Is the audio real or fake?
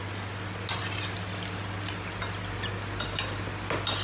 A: real